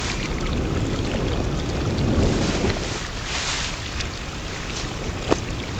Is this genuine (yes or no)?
yes